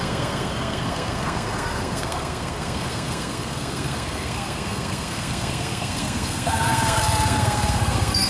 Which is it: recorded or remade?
remade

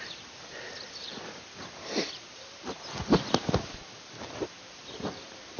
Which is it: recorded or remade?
recorded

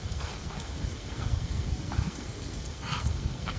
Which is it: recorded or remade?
remade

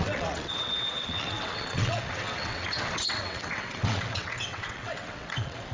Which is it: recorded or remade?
remade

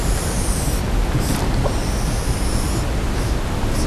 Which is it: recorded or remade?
recorded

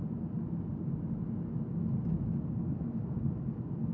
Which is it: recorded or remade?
recorded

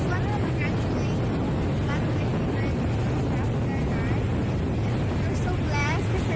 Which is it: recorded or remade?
recorded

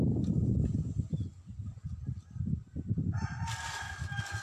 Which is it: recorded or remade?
recorded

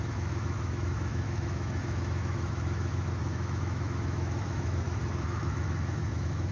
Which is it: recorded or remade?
remade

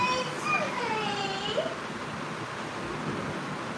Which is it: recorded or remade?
recorded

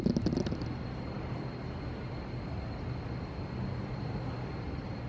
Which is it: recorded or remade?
recorded